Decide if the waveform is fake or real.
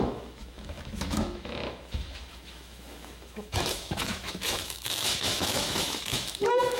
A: fake